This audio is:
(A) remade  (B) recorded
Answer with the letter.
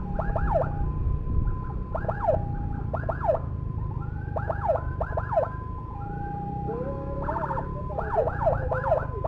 B